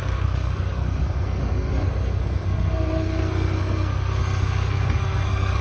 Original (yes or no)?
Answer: no